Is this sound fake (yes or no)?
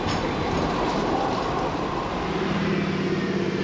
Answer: no